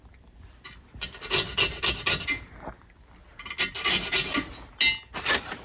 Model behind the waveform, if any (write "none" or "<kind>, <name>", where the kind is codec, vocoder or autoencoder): none